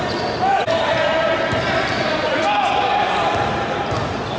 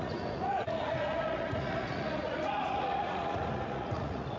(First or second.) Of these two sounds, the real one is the first